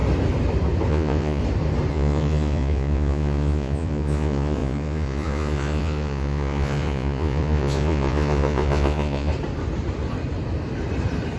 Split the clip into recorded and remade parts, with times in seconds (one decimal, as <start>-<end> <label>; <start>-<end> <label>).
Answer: 0.0-0.9 recorded; 0.9-1.4 remade; 1.4-1.9 recorded; 1.9-9.3 remade; 9.3-11.4 recorded